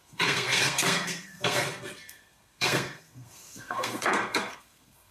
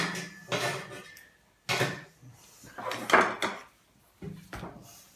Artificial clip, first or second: first